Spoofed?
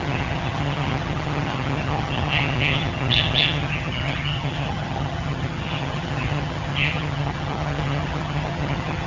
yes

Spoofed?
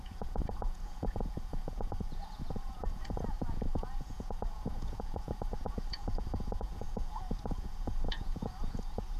yes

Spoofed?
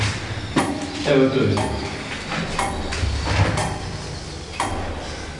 no